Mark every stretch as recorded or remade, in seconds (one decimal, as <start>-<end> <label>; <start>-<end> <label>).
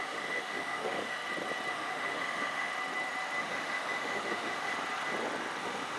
0.0-1.2 remade; 1.2-1.7 recorded; 1.7-2.7 remade; 2.7-3.4 recorded; 3.4-4.7 remade; 4.7-5.6 recorded; 5.6-6.0 remade